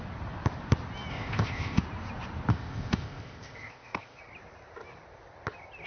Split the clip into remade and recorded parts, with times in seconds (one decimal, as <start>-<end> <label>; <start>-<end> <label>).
0.0-1.1 recorded; 1.1-1.8 remade; 1.8-2.5 recorded; 2.5-4.2 remade; 4.2-5.9 recorded